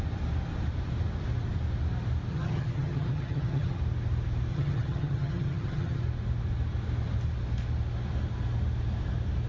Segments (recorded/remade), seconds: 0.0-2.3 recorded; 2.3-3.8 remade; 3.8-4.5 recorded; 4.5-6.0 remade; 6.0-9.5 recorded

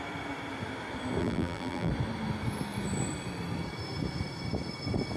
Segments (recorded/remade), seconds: 0.0-1.2 recorded; 1.2-1.9 remade; 1.9-5.2 recorded

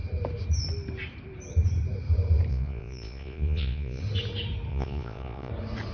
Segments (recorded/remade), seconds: 0.0-2.5 recorded; 2.5-4.0 remade; 4.0-4.7 recorded; 4.7-5.5 remade; 5.5-5.9 recorded

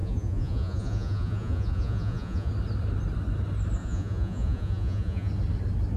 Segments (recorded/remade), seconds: 0.0-2.5 remade; 2.5-3.8 recorded; 3.8-5.3 remade; 5.3-6.0 recorded

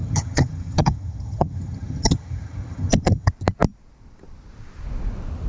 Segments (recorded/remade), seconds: 0.0-3.3 remade; 3.3-5.5 recorded

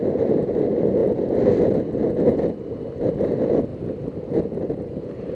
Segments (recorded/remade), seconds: 0.0-5.3 recorded

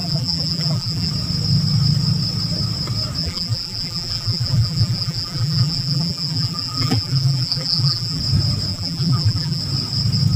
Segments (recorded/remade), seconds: 0.0-1.1 remade; 1.1-3.2 recorded; 3.2-8.2 remade; 8.2-8.7 recorded; 8.7-9.6 remade; 9.6-10.4 recorded

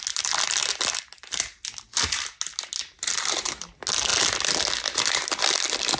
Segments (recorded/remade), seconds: 0.0-6.0 recorded